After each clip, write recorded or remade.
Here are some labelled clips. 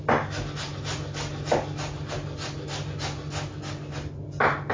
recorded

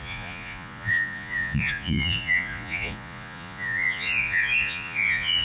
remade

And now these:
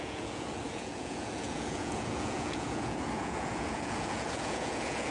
remade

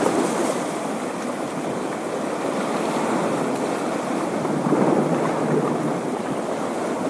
recorded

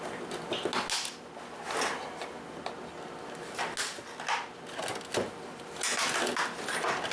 recorded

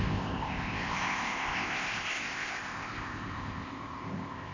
remade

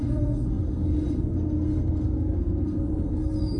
remade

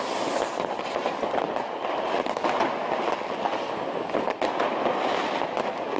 recorded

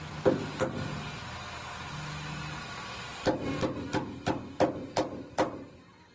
recorded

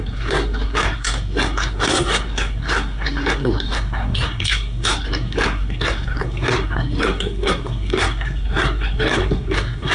remade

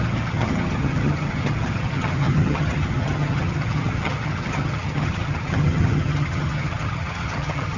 remade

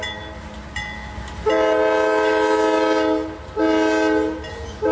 recorded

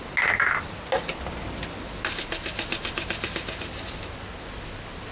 recorded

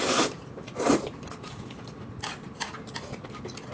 recorded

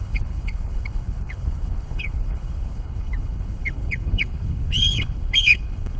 remade